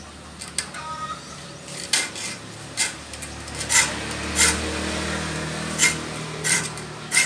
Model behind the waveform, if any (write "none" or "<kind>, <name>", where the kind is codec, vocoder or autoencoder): none